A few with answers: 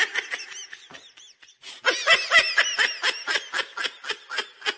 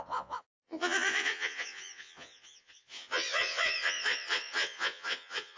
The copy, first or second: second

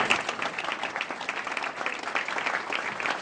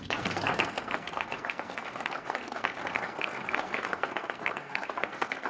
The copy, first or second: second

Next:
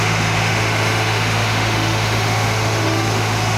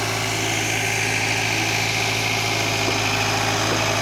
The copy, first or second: first